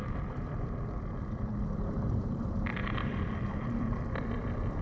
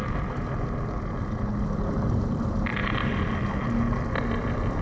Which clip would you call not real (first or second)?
first